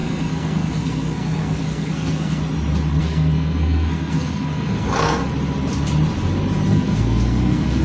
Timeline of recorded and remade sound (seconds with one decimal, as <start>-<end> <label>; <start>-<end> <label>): 0.0-2.4 remade; 2.4-3.0 recorded; 3.0-5.2 remade; 5.2-6.7 recorded; 6.7-7.8 remade

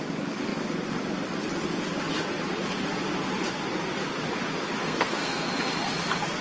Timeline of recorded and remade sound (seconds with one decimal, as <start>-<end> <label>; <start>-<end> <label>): 0.0-4.8 recorded; 4.8-5.5 remade; 5.5-6.4 recorded

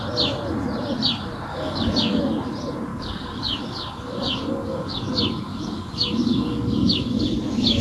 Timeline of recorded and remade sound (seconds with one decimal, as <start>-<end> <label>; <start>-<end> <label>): 0.0-1.5 recorded; 1.5-2.2 remade; 2.2-2.9 recorded; 2.9-5.1 remade; 5.1-5.5 recorded; 5.5-7.2 remade; 7.2-7.8 recorded

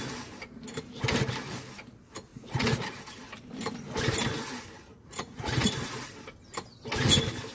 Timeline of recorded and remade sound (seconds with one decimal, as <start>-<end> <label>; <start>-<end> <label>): 0.0-2.3 recorded; 2.3-2.8 remade; 2.8-4.9 recorded; 4.9-5.7 remade; 5.7-7.5 recorded

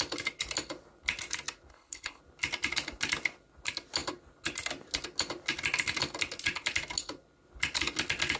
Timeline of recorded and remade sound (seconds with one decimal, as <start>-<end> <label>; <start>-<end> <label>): 0.0-1.7 recorded; 1.7-2.2 remade; 2.2-8.4 recorded

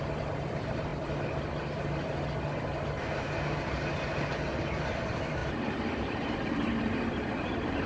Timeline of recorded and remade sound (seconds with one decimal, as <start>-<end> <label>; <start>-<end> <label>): 0.0-0.9 remade; 0.9-4.7 recorded; 4.7-5.4 remade; 5.4-6.7 recorded; 6.7-7.9 remade

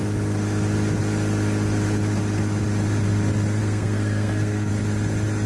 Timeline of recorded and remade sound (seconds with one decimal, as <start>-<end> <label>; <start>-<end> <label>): 0.0-3.6 recorded; 3.6-4.7 remade; 4.7-5.5 recorded